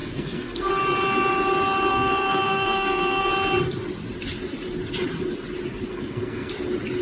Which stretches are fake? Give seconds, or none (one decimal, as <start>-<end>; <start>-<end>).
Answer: 0.0-0.7; 1.9-3.3; 5.9-6.5